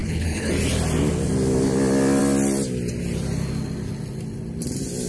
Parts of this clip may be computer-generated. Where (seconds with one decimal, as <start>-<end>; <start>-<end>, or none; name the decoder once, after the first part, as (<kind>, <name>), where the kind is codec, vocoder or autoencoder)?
0.0-0.5 (codec, HILCodec)